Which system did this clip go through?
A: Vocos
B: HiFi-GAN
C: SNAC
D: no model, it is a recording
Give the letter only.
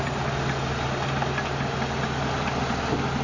D